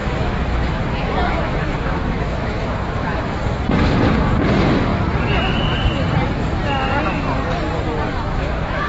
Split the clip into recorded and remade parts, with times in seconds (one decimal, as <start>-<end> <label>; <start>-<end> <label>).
0.0-3.4 remade; 3.4-8.1 recorded; 8.1-8.9 remade